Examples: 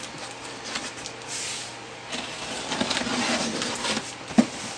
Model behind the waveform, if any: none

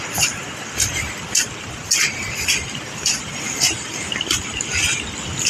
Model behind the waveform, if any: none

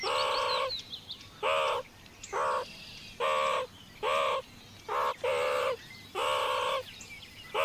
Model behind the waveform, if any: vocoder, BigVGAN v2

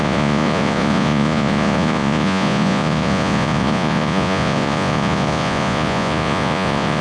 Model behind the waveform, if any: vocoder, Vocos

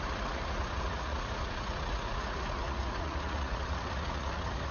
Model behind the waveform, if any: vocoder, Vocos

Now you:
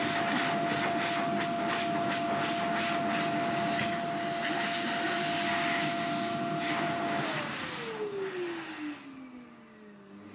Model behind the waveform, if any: none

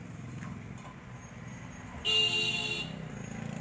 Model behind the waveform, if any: none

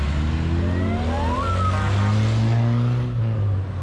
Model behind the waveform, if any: none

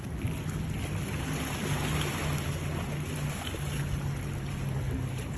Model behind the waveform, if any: none